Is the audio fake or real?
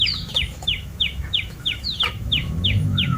fake